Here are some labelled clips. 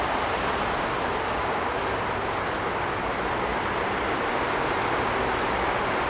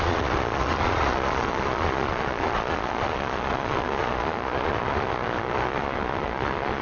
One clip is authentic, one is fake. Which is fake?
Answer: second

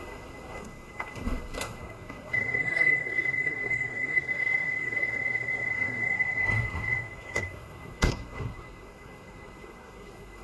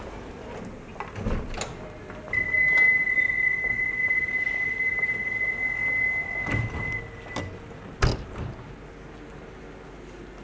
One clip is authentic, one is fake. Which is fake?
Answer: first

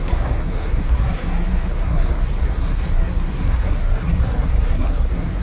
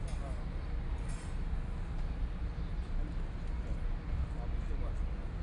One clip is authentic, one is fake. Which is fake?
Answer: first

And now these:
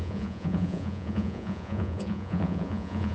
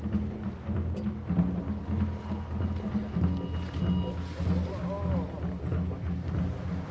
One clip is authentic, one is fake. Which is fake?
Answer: first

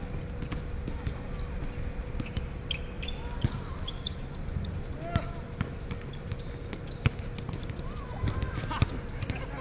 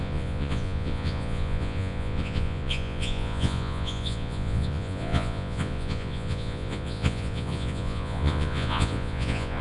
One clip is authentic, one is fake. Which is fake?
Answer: second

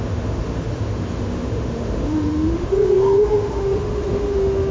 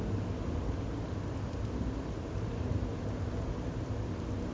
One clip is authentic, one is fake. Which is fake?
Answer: first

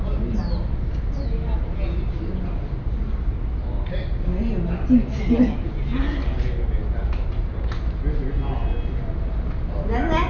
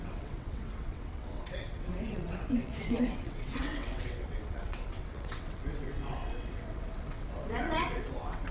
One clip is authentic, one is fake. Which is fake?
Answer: second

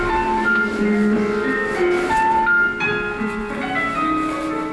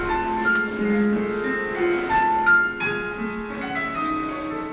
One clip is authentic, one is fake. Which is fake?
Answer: first